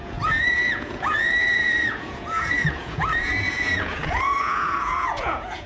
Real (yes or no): no